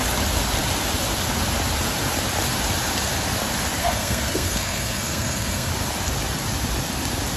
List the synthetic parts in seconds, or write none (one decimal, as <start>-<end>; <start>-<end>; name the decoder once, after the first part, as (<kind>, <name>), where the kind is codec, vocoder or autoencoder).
3.8-5.7 (codec, SNAC)